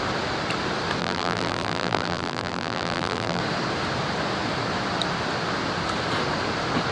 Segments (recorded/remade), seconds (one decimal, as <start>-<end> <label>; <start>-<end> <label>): 0.0-1.0 recorded; 1.0-3.4 remade; 3.4-6.9 recorded